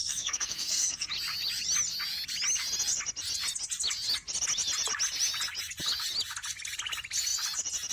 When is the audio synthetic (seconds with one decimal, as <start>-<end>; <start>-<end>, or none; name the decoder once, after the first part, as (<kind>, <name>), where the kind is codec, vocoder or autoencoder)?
0.0-1.1 (codec, SNAC)